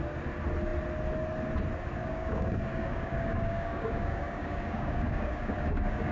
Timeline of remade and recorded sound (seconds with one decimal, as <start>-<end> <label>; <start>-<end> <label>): 0.0-2.0 recorded; 2.0-6.1 remade